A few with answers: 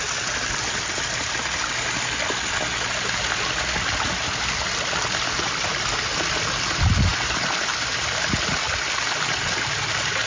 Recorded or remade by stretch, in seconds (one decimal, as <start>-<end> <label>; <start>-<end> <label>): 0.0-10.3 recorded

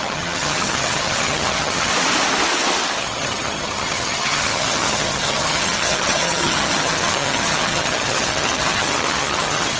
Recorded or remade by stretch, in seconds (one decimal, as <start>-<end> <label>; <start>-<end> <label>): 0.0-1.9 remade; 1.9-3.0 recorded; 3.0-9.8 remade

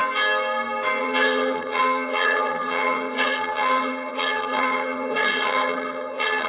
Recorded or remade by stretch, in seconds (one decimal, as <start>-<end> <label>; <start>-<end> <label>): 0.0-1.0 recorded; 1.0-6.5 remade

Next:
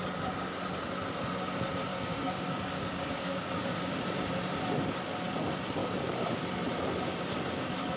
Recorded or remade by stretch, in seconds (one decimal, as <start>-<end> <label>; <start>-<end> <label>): 0.0-1.9 recorded; 1.9-4.0 remade; 4.0-5.8 recorded; 5.8-6.4 remade; 6.4-8.0 recorded